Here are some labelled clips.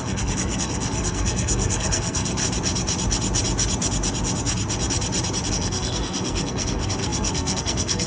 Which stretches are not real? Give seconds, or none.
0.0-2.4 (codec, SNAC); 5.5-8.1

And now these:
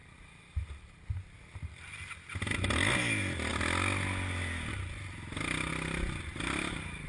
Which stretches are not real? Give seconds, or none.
none